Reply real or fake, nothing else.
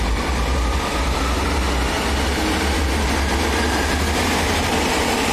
real